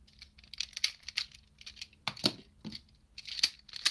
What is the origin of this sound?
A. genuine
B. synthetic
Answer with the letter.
A